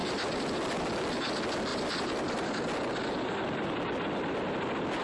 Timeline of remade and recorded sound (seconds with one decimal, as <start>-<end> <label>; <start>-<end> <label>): 0.0-0.6 remade; 0.6-1.7 recorded; 1.7-3.3 remade; 3.3-5.0 recorded